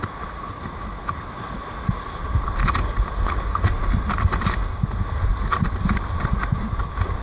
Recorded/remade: recorded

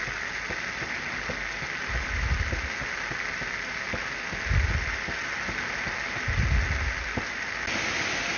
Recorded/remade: recorded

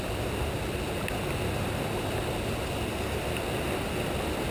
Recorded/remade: recorded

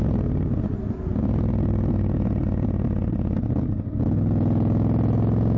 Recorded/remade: recorded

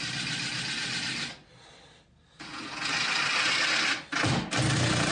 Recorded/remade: recorded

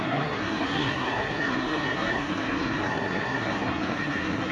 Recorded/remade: remade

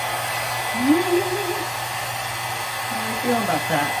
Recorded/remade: recorded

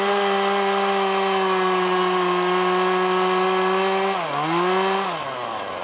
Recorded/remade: recorded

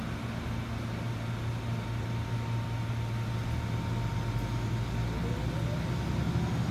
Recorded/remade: recorded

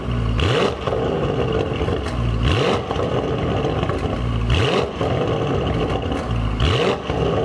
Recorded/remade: recorded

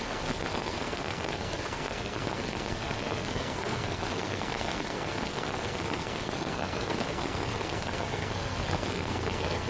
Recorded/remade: remade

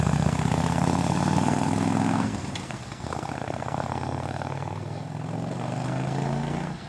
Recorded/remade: remade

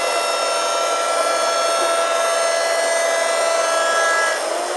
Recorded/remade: recorded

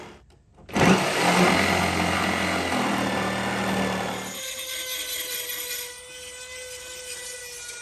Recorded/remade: recorded